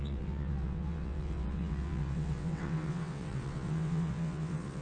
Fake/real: fake